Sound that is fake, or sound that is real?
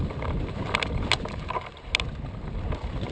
real